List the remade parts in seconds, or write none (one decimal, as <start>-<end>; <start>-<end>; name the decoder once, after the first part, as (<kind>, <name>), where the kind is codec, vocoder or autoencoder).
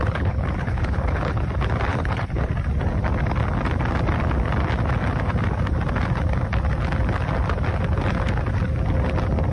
0.0-1.4 (codec, HILCodec); 1.9-2.5